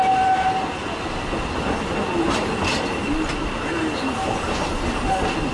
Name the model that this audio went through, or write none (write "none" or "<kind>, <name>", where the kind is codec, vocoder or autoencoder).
none